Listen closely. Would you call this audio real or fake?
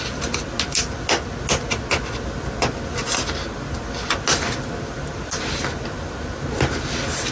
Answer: real